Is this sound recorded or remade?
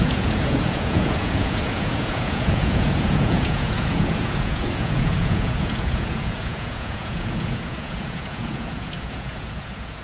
remade